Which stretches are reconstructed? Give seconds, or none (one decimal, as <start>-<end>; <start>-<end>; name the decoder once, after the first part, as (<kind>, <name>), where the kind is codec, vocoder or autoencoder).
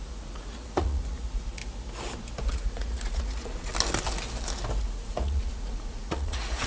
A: 0.0-1.6 (vocoder, Vocos); 2.5-3.7; 4.8-6.7